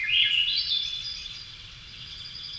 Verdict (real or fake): fake